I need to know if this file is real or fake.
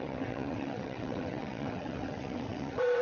fake